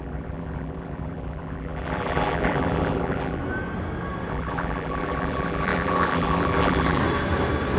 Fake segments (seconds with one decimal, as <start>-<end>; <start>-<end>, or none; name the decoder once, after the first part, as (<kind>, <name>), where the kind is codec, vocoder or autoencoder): 0.0-3.4 (vocoder, BigVGAN v2); 4.3-7.0